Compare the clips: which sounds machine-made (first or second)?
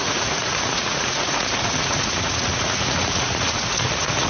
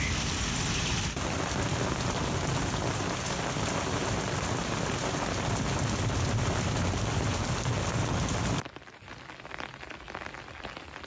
first